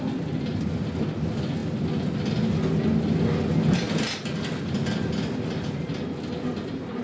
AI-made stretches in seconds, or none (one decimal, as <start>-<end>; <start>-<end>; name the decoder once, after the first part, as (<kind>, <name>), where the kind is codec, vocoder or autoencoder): none